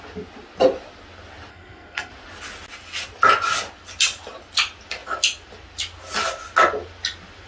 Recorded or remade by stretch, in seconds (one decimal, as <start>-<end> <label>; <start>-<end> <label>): 0.0-1.5 recorded; 1.5-2.1 remade; 2.1-7.5 recorded

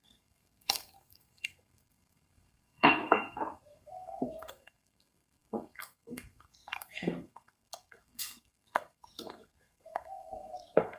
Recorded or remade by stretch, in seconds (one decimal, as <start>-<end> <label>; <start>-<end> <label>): 0.0-11.0 remade

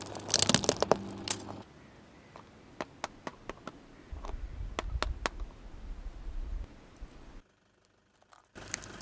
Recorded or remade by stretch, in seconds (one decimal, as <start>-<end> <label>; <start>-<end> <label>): 0.0-9.0 recorded

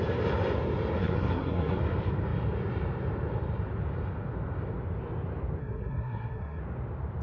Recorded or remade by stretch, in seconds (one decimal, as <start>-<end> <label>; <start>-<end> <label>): 0.0-1.0 recorded; 1.0-1.8 remade; 1.8-5.6 recorded; 5.6-6.6 remade; 6.6-7.2 recorded

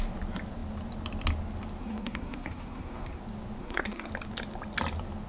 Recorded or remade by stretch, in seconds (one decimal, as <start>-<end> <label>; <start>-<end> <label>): 0.0-1.8 recorded; 1.8-3.2 remade; 3.2-3.6 recorded; 3.6-4.1 remade; 4.1-5.3 recorded

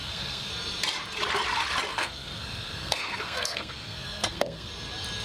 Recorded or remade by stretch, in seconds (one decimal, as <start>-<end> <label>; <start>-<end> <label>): 0.0-0.5 remade; 0.5-1.9 recorded; 1.9-4.7 remade; 4.7-5.2 recorded